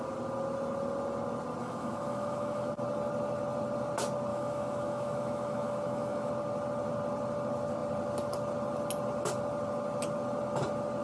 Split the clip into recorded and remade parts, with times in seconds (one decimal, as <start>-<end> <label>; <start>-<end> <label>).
0.0-1.6 recorded; 1.6-2.7 remade; 2.7-4.3 recorded; 4.3-6.3 remade; 6.3-11.0 recorded